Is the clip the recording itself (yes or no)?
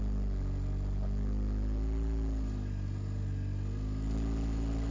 yes